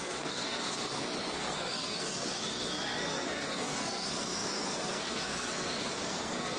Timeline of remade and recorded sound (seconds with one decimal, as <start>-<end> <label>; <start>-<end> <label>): 0.0-6.6 remade